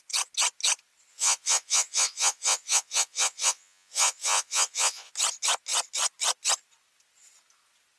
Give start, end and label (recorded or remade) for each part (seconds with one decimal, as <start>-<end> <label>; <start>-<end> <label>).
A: 0.0-1.1 recorded; 1.1-5.1 remade; 5.1-8.0 recorded